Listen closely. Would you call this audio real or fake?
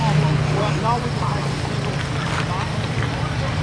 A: real